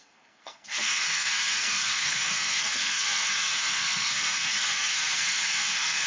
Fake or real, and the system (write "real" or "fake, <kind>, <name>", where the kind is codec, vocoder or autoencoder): fake, codec, SNAC